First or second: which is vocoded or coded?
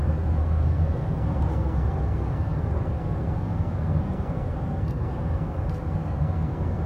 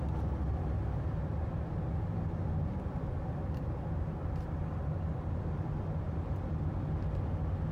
first